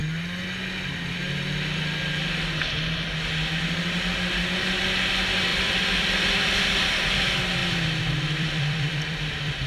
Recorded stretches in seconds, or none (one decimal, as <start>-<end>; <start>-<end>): 0.0-5.5; 6.6-7.6